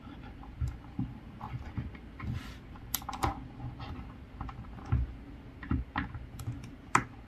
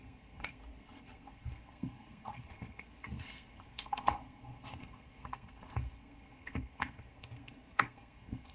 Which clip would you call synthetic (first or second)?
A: second